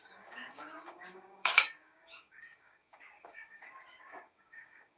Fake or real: fake